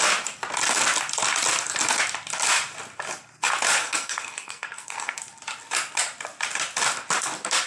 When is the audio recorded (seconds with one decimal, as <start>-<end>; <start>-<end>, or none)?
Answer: 0.0-3.8; 5.2-7.7